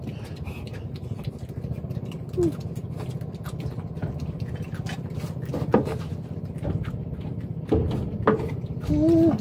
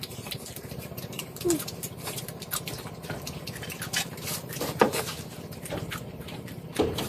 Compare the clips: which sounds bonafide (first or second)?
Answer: first